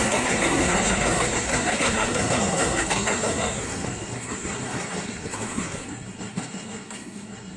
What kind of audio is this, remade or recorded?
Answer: remade